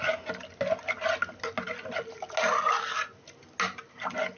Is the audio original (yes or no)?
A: yes